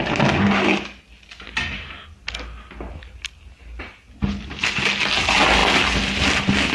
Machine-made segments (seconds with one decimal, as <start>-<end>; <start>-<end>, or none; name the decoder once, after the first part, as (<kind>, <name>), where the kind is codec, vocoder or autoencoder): none